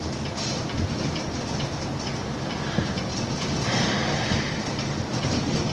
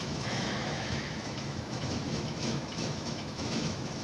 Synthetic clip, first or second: second